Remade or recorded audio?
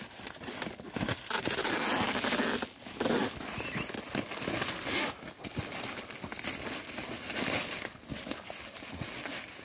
recorded